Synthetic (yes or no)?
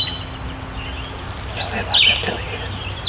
no